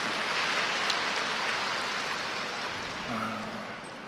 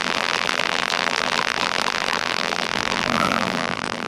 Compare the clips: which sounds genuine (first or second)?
first